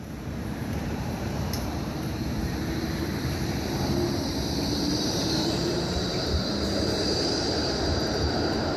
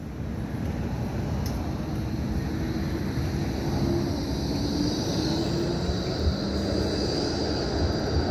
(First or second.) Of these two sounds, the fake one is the first